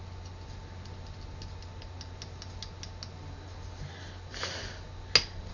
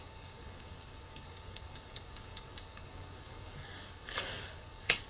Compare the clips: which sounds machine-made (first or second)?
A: second